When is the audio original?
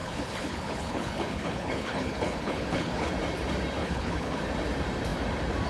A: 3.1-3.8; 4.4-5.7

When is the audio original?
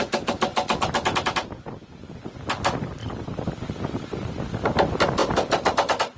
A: 0.0-6.2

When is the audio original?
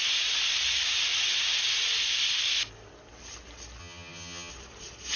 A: 0.0-3.8; 4.5-5.2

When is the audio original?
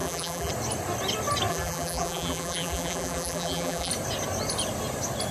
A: 0.5-1.5; 3.9-5.3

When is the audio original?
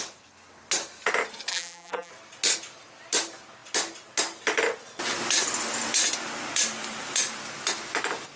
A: 0.0-1.5; 2.1-8.4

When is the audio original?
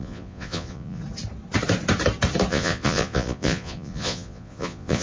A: 1.0-2.5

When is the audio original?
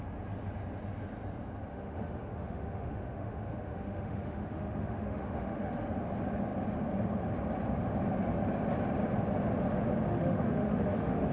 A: 0.0-1.7; 5.9-10.1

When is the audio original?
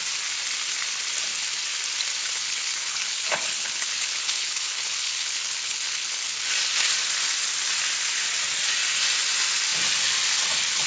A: 0.0-2.2; 6.5-10.9